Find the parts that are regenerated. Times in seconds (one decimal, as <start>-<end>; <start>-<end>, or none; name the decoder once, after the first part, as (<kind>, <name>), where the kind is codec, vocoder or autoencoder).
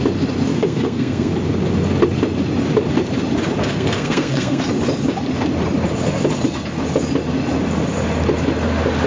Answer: 0.5-1.3 (codec, SNAC); 3.6-4.6